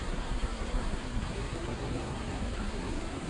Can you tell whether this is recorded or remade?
remade